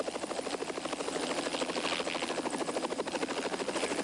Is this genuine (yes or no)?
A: yes